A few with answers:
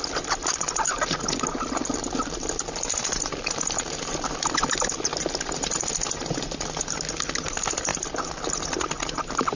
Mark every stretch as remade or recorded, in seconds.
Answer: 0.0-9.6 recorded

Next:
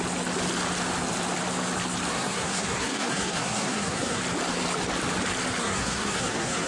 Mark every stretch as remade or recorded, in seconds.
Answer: 0.0-2.1 recorded; 2.1-4.2 remade; 4.2-5.6 recorded; 5.6-6.7 remade

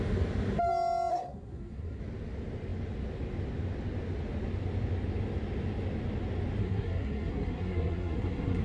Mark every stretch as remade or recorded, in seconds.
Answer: 0.0-1.1 recorded; 1.1-2.0 remade; 2.0-6.6 recorded; 6.6-8.6 remade

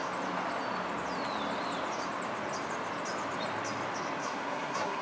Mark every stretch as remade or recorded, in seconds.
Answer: 0.0-4.2 recorded; 4.2-5.0 remade

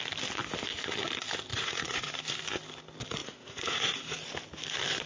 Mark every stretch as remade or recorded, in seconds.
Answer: 0.0-1.5 recorded; 1.5-2.1 remade; 2.1-3.2 recorded; 3.2-4.1 remade; 4.1-5.1 recorded

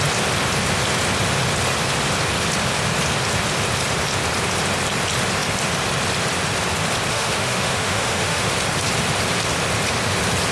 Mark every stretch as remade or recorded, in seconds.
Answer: 0.0-7.1 recorded; 7.1-8.5 remade; 8.5-10.5 recorded